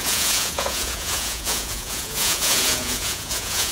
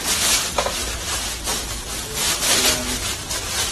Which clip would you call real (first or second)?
second